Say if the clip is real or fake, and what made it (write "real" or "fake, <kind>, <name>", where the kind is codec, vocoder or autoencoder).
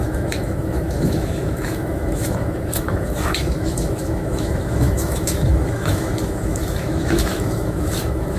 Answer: fake, autoencoder, DAC-VAE